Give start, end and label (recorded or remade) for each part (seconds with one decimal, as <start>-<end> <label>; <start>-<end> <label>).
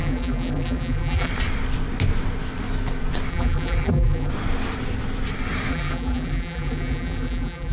0.0-1.3 remade; 1.3-3.3 recorded; 3.3-4.3 remade; 4.3-5.7 recorded; 5.7-7.7 remade